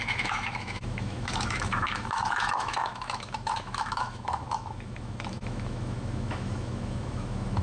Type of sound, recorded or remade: remade